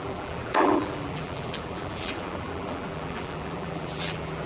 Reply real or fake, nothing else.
fake